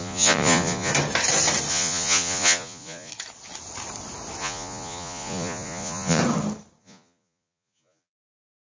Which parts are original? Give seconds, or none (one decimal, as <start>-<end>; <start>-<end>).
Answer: 0.9-1.7; 3.1-4.4; 6.2-6.8